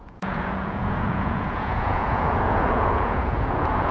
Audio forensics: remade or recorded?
remade